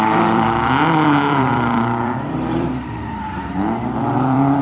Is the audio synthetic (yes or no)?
yes